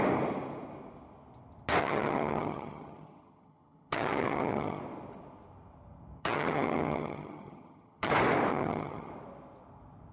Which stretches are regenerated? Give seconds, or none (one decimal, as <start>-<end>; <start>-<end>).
1.8-4.8; 6.2-8.1; 8.5-9.1